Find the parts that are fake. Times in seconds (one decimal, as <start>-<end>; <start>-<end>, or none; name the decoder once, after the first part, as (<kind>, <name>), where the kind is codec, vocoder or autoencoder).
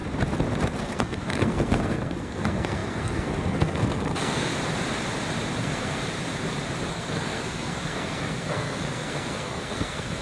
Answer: 0.8-4.5 (codec, SNAC); 5.6-6.0; 6.9-10.2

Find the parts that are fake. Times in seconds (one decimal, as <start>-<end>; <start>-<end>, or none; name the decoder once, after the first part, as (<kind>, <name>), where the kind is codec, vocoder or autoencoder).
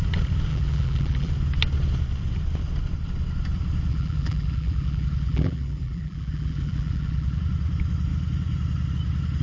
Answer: 0.5-1.3 (vocoder, BigVGAN v2); 3.9-7.4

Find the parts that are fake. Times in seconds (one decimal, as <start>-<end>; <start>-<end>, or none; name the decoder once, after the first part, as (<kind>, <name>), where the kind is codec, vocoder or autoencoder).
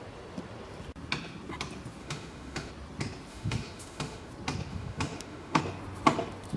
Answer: 2.0-2.7 (autoencoder, DAC-VAE); 3.3-4.3; 4.7-5.6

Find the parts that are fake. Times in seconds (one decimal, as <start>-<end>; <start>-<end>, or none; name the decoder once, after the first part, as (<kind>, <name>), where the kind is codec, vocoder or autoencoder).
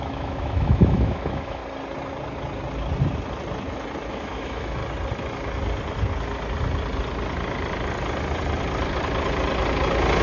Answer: 0.0-1.6 (autoencoder, DAC-VAE); 4.1-4.8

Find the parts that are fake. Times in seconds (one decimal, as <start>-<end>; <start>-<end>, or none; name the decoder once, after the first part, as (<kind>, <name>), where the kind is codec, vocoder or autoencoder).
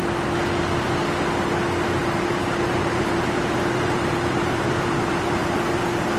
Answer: 2.0-5.7 (vocoder, BigVGAN v2)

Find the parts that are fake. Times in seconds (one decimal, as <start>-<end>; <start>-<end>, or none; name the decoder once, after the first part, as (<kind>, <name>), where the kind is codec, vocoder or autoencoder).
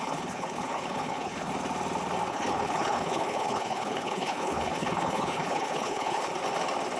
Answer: 0.0-1.5 (codec, HILCodec); 2.3-6.3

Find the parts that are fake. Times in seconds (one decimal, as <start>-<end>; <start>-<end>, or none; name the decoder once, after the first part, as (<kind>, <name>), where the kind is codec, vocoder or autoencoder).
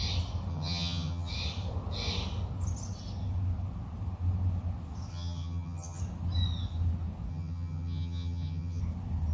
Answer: 0.5-1.3 (vocoder, HiFi-GAN); 5.1-6.0; 7.3-8.8